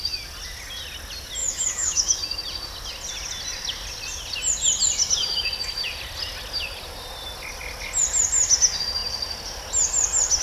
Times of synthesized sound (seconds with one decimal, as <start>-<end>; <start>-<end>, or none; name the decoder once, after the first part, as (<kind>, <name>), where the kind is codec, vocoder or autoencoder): 1.4-2.2 (autoencoder, DAC-VAE)